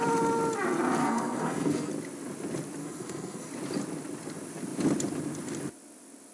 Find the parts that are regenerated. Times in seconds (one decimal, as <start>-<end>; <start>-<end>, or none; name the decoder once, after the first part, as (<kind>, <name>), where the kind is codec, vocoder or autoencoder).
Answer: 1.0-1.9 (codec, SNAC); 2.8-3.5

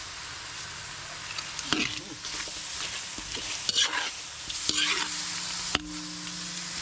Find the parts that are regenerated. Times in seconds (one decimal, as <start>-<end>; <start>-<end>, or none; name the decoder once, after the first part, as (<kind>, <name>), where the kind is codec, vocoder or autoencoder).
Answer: none

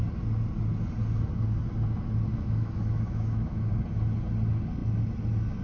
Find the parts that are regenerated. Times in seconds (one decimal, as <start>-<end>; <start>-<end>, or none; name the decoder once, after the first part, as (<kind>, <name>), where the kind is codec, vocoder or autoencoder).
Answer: 2.3-3.7 (autoencoder, DAC-VAE)